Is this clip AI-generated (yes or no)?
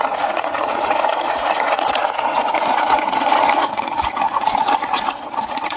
yes